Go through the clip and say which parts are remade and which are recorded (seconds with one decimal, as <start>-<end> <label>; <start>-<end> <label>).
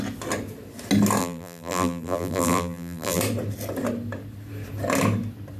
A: 0.0-1.2 recorded; 1.2-3.2 remade; 3.2-5.6 recorded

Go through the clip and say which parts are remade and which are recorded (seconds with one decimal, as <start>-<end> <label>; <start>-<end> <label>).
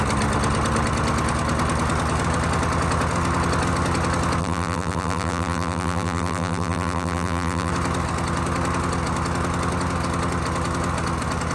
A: 0.0-4.4 recorded; 4.4-7.7 remade; 7.7-11.5 recorded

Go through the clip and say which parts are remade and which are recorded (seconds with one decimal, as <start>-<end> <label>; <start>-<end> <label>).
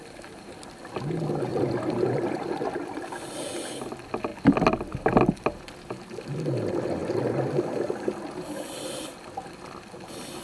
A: 0.0-1.5 recorded; 1.5-3.3 remade; 3.3-10.4 recorded